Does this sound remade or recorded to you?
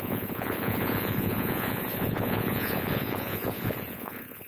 remade